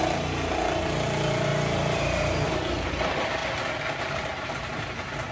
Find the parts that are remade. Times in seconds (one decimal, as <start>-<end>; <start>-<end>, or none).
0.0-1.5; 2.0-3.4; 4.0-5.3